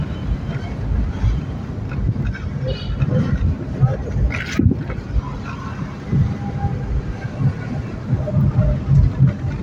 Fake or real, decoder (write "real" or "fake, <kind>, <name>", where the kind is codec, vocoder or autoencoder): real